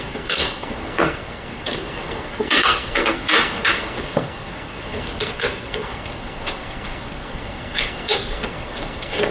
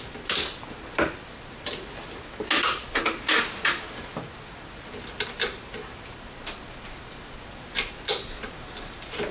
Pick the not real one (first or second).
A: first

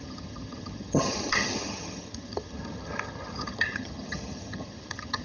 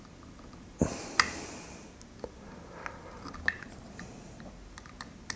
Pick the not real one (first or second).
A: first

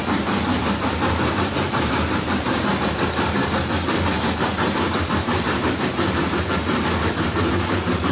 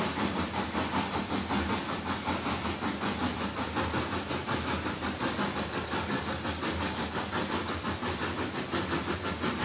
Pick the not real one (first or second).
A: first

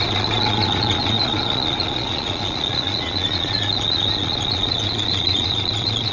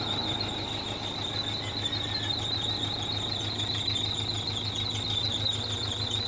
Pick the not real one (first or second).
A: first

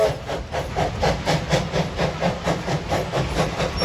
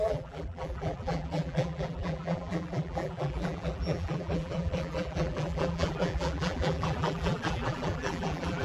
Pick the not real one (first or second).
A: second